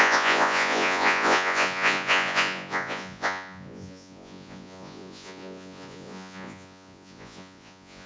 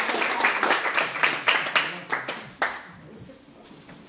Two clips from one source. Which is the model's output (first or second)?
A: first